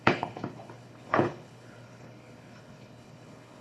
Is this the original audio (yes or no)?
no